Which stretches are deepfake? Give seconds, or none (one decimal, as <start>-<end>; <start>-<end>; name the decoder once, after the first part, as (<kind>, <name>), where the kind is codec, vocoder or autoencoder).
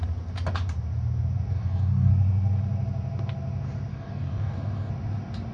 1.5-2.1 (codec, DAC); 3.9-4.9